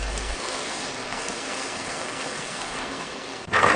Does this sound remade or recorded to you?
remade